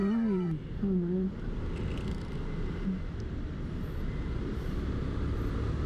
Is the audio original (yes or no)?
yes